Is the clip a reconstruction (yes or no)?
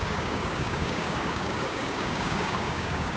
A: yes